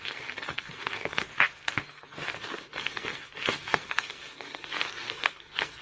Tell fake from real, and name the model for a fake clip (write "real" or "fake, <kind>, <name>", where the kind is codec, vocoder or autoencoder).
fake, codec, SNAC